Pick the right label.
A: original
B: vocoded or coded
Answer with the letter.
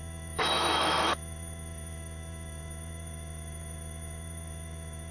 B